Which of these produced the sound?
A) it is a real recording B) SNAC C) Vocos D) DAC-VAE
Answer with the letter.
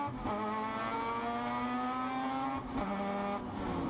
A